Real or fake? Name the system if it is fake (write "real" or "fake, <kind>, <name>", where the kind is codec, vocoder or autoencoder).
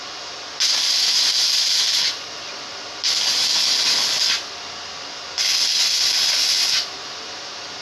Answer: real